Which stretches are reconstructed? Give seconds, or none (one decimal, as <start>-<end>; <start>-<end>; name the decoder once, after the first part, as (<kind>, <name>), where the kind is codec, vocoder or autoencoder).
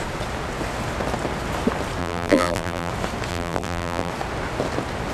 2.0-2.9 (vocoder, BigVGAN v2); 3.3-4.1